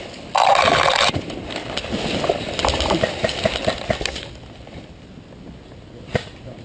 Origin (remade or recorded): recorded